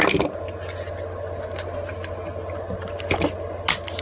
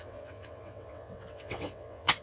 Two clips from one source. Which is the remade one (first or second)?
second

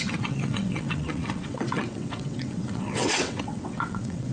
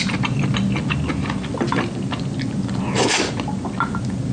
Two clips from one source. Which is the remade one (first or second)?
first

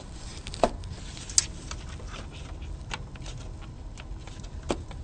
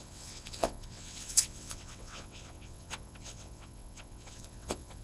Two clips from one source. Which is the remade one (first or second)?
second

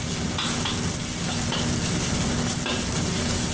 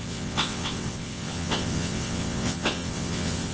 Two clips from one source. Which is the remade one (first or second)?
second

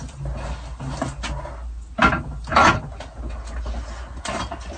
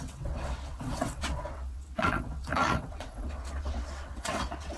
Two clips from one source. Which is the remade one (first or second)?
second